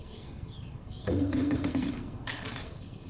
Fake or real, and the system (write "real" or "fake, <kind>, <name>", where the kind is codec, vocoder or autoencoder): fake, codec, SNAC